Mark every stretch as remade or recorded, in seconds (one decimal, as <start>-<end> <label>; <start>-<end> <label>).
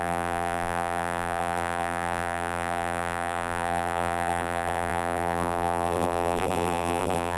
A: 0.0-7.4 remade